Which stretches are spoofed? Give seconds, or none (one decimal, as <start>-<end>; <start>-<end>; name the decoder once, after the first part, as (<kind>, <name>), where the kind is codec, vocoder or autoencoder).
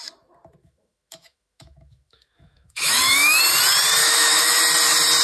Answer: 0.6-3.4 (autoencoder, DAC-VAE); 4.0-4.6